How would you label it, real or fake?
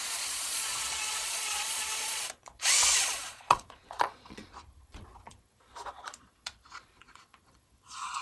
fake